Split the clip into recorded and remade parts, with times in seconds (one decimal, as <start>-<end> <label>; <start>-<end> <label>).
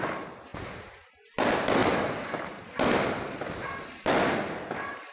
0.0-5.1 recorded